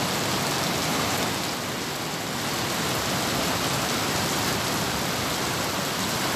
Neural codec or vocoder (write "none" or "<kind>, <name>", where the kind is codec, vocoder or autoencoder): none